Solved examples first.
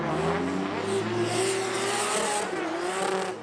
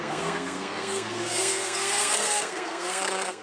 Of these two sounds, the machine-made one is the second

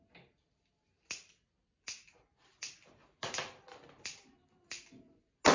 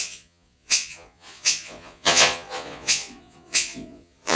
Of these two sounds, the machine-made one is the second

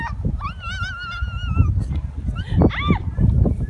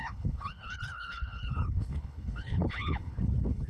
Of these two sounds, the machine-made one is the second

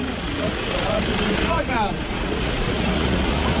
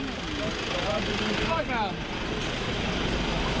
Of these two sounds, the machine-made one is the first